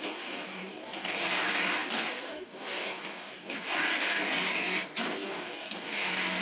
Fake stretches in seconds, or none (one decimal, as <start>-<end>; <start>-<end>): 0.0-6.4